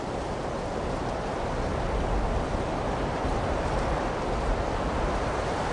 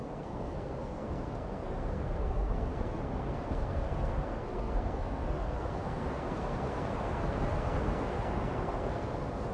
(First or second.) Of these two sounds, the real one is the first